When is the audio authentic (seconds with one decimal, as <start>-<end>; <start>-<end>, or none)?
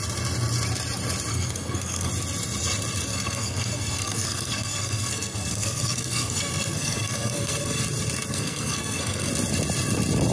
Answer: 0.0-1.3; 2.1-3.1; 7.8-8.3; 9.3-10.3